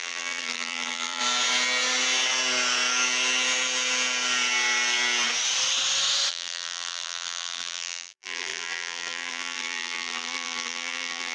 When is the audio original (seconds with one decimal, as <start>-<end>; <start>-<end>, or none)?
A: 1.2-6.3